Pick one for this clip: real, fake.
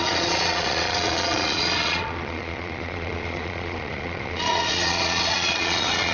fake